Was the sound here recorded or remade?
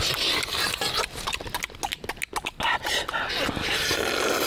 recorded